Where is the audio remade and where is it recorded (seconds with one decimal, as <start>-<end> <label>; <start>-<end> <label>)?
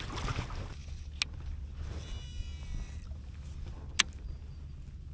0.0-5.1 recorded